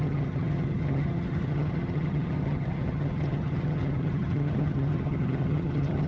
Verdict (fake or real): fake